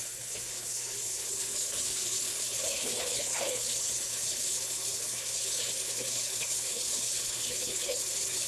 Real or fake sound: fake